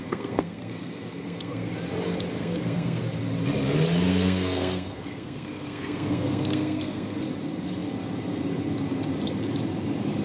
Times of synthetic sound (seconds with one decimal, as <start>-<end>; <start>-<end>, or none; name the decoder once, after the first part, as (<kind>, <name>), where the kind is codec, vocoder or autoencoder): 0.0-1.7 (codec, SNAC); 2.4-3.0; 4.1-7.2